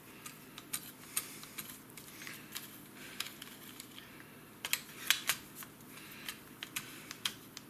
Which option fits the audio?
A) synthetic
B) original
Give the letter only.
B